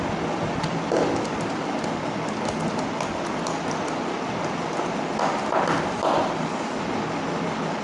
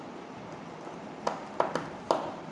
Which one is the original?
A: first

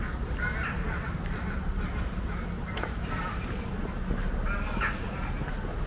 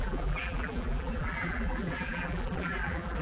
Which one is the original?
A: first